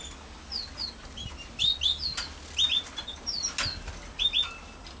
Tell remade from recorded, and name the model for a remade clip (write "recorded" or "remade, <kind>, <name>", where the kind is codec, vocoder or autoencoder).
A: recorded